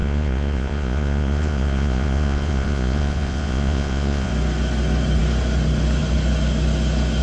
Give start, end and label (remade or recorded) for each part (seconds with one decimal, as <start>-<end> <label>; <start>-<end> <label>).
0.0-4.3 remade; 4.3-7.2 recorded